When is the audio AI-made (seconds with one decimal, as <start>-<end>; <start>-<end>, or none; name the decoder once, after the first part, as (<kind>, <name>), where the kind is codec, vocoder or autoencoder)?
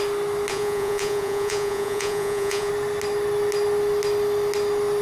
0.5-2.7 (vocoder, Vocos)